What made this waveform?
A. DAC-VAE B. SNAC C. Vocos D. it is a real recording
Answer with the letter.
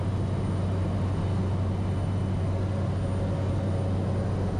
D